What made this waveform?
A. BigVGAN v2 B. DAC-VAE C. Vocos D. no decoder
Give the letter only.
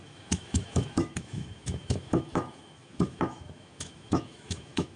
B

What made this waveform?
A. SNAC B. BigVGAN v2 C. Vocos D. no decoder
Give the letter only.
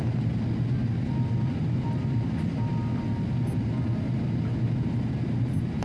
D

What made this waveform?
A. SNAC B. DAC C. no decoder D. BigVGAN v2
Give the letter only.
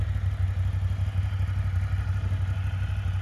C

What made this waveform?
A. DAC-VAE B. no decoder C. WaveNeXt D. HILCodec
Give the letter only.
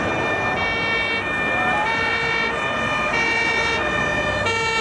B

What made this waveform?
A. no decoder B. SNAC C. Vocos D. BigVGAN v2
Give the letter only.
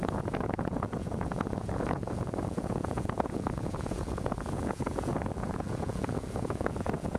C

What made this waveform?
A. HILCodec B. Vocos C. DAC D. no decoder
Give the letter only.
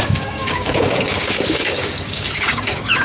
C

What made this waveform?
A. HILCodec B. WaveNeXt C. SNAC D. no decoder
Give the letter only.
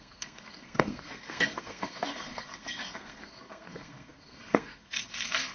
C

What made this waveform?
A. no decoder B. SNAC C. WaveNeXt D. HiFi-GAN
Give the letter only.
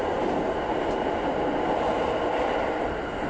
A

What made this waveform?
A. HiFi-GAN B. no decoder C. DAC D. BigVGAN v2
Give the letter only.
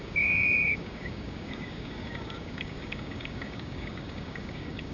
C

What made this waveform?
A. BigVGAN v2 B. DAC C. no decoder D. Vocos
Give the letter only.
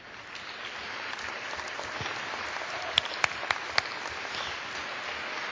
C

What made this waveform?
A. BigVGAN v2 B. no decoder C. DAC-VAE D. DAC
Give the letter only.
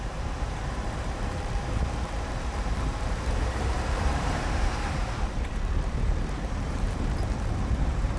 A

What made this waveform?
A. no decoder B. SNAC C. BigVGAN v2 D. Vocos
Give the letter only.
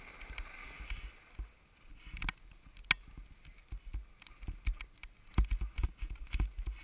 A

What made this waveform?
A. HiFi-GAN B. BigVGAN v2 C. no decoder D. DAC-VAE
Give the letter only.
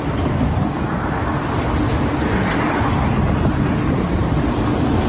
C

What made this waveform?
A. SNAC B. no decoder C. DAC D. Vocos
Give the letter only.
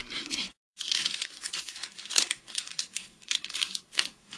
A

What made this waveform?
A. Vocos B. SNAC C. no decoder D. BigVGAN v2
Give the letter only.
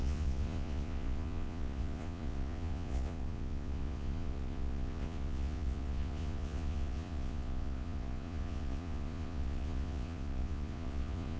A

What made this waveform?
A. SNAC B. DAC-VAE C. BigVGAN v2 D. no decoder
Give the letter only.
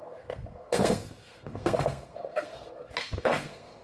A